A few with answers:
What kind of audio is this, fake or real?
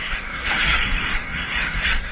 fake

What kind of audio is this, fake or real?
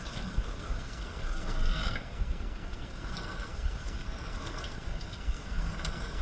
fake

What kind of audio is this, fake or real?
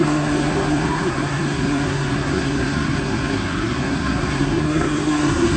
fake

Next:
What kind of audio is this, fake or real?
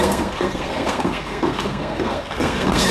fake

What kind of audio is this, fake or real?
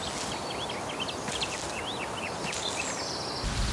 real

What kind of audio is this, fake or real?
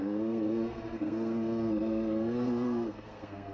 fake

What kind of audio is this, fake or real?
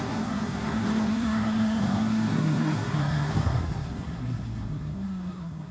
fake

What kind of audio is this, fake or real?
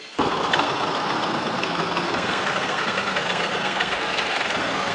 fake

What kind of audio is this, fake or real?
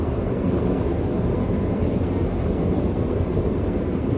fake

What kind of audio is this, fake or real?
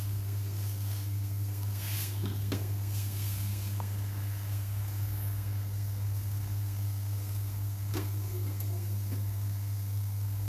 fake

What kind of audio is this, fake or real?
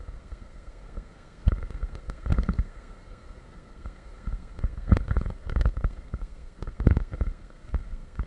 fake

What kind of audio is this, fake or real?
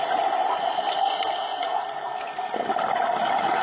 real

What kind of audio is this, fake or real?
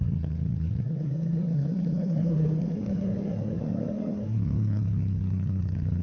fake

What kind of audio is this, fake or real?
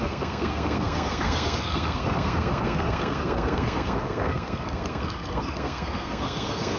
fake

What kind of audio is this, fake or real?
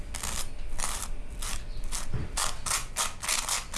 real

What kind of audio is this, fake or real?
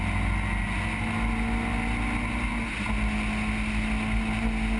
real